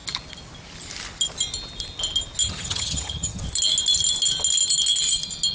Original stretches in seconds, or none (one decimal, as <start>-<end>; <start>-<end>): 0.0-2.4; 3.4-5.5